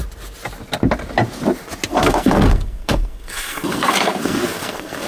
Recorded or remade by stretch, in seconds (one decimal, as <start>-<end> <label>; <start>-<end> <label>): 0.0-1.9 recorded; 1.9-5.1 remade